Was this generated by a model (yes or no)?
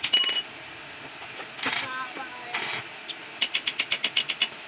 no